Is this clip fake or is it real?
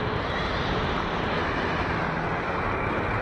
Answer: real